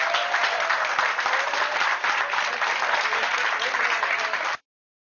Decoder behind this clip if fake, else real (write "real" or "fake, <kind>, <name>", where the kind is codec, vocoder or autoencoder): real